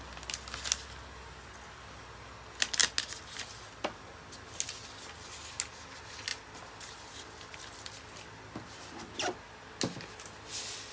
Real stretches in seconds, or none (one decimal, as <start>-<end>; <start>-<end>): 0.0-10.9